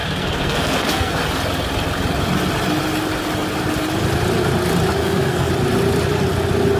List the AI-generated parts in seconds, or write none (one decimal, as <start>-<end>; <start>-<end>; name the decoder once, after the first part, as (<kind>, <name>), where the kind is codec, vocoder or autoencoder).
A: 0.0-1.2 (codec, SNAC); 5.0-5.5